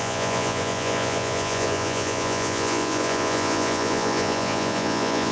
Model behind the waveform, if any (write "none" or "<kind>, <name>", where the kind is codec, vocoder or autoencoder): vocoder, Vocos